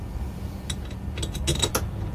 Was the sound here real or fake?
real